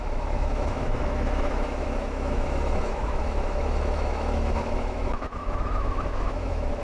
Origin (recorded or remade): remade